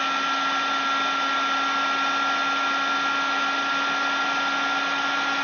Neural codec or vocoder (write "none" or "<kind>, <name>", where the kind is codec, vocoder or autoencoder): none